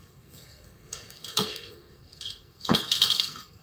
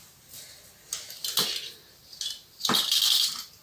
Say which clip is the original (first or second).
second